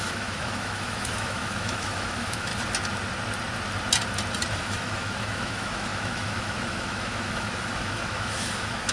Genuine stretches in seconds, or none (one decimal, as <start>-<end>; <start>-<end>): 2.5-4.6